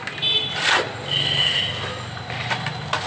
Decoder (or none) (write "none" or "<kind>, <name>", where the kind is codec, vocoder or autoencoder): none